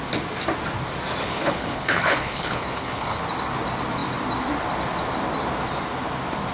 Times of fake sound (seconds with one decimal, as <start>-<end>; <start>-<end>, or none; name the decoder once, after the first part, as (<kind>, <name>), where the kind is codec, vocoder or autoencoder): 1.2-3.2 (codec, HILCodec)